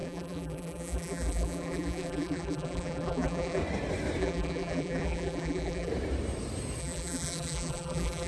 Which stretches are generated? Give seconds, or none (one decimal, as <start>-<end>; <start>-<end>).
0.0-3.6; 4.2-5.9; 6.8-8.3